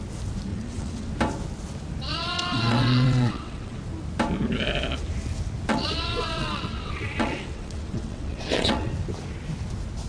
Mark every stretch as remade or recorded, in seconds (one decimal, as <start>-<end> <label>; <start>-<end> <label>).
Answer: 0.0-0.5 recorded; 0.5-1.1 remade; 1.1-2.1 recorded; 2.1-3.8 remade; 3.8-5.7 recorded; 5.7-8.9 remade; 8.9-10.1 recorded